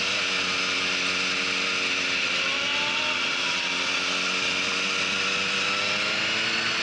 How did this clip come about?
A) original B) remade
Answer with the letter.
A